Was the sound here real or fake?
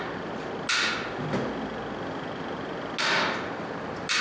real